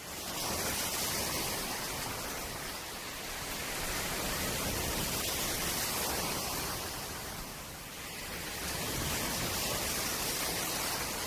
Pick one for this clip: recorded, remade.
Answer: recorded